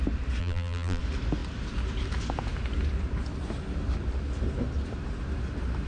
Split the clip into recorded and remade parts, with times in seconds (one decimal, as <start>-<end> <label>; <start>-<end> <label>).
0.0-0.4 recorded; 0.4-1.0 remade; 1.0-5.9 recorded